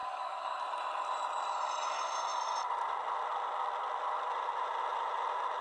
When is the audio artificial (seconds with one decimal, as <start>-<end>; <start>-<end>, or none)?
0.0-0.6